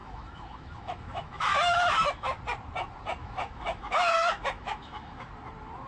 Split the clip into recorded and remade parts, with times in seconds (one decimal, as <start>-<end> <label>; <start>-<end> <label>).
0.0-2.4 remade; 2.4-3.2 recorded; 3.2-5.3 remade; 5.3-5.9 recorded